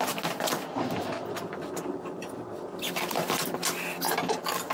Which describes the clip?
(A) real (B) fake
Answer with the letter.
A